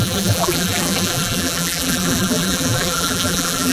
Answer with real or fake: fake